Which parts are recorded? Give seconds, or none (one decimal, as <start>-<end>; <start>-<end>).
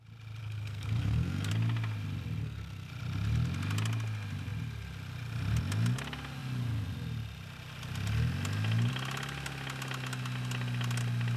0.0-0.4; 1.5-2.4; 2.9-11.4